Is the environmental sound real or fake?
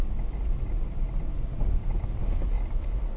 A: real